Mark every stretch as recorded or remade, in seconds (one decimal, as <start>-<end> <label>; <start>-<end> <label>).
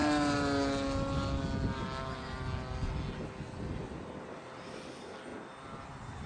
0.0-6.3 recorded